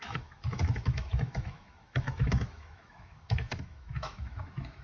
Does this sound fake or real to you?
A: fake